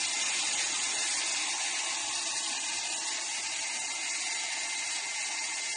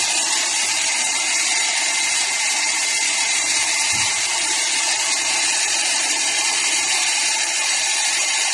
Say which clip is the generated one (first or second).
second